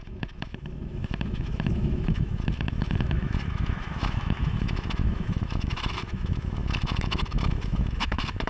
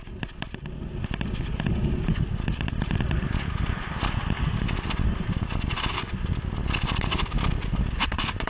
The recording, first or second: second